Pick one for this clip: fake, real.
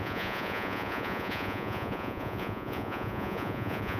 fake